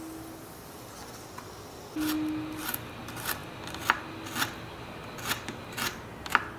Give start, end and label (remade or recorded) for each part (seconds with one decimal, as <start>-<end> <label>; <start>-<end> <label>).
0.0-6.6 recorded

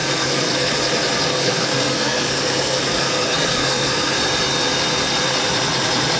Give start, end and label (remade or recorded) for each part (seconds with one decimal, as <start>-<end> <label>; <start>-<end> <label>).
0.0-0.7 remade; 0.7-1.3 recorded; 1.3-4.2 remade; 4.2-6.2 recorded

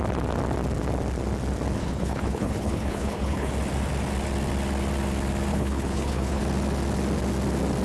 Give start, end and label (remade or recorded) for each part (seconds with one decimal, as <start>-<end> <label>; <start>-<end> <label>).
0.0-1.8 recorded; 1.8-3.5 remade; 3.5-5.5 recorded; 5.5-6.4 remade; 6.4-7.8 recorded